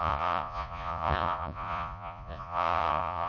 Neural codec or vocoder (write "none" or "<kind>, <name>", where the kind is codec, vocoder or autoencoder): vocoder, Vocos